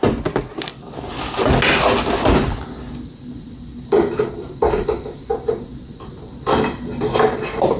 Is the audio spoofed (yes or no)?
no